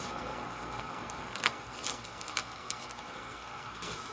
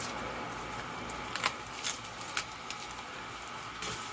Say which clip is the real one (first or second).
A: second